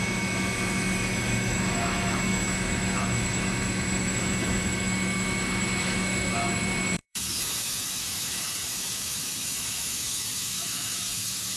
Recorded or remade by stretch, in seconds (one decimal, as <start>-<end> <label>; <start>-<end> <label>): 0.0-11.6 remade